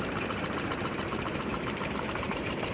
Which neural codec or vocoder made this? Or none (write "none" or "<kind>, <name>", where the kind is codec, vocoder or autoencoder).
vocoder, BigVGAN v2